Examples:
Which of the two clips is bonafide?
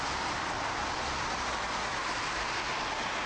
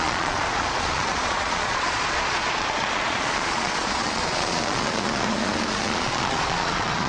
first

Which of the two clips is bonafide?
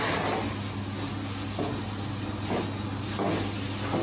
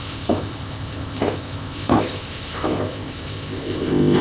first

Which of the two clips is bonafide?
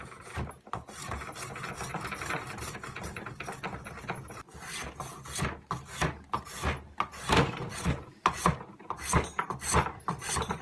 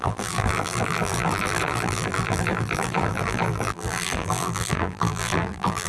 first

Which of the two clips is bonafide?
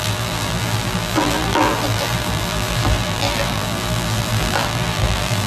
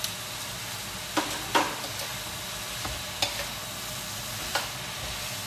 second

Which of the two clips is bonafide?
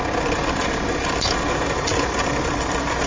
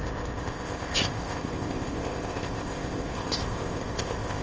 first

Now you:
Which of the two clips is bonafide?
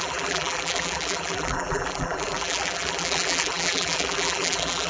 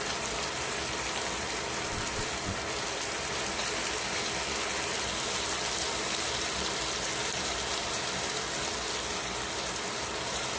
second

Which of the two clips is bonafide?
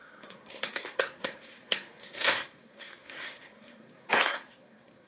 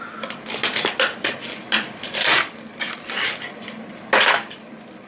second